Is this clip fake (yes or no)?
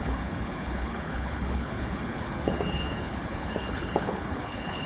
yes